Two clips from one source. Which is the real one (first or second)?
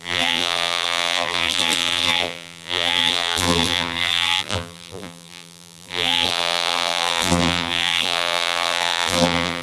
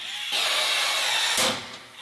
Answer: second